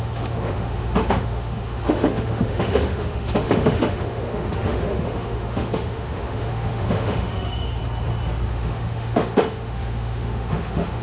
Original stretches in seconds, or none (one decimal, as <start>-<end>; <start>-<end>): 7.8-8.5